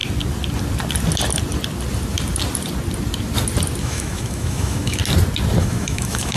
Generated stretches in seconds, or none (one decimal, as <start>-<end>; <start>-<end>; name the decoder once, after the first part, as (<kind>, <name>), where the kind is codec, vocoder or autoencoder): 3.8-5.0 (autoencoder, DAC-VAE); 5.6-6.4